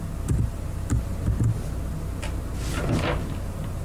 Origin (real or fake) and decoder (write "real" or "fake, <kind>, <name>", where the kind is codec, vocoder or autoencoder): real